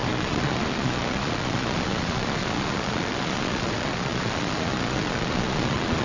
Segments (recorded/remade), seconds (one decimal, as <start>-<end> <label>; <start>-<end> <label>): 0.0-6.0 remade